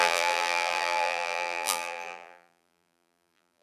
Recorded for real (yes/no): no